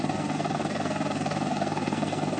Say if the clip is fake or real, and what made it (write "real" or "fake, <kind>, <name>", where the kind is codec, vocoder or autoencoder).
fake, codec, SNAC